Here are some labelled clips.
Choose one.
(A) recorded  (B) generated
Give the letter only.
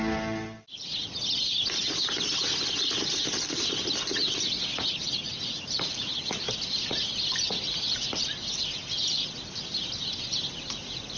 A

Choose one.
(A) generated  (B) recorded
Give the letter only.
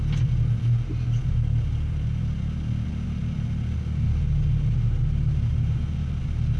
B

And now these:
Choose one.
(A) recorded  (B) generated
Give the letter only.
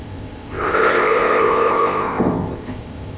B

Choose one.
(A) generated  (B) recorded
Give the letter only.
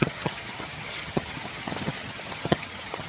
A